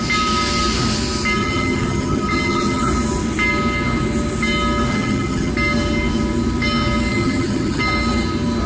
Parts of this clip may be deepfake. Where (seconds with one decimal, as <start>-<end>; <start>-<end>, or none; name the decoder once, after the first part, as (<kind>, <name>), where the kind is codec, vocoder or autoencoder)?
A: 1.4-2.8 (vocoder, HiFi-GAN); 4.9-5.5; 7.1-7.8